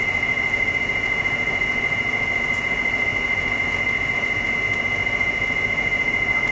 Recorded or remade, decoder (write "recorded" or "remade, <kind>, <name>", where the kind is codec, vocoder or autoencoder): remade, vocoder, Vocos